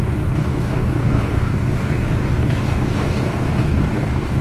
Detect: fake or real fake